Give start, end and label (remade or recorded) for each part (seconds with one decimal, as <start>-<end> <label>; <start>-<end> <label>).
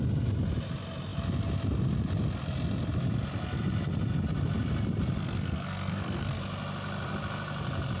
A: 0.0-5.2 recorded; 5.2-6.4 remade; 6.4-8.0 recorded